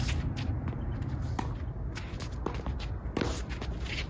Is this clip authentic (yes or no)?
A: yes